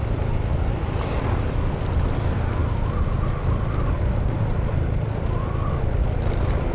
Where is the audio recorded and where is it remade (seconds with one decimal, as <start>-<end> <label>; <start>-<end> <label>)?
0.0-6.7 recorded